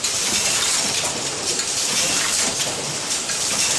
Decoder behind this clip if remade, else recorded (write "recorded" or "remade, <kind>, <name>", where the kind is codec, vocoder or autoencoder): remade, vocoder, BigVGAN v2